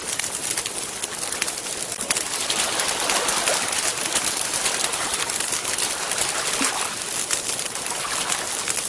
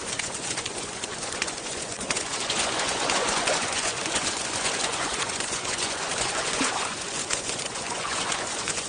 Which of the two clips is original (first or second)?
first